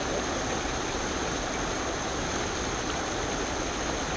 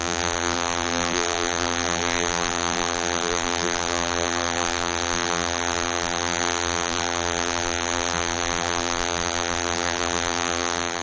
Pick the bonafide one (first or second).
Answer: first